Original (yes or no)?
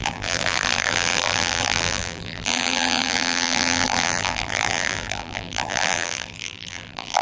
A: no